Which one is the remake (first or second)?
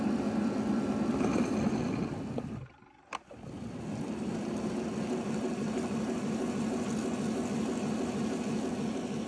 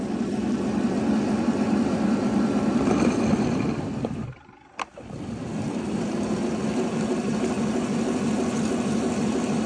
second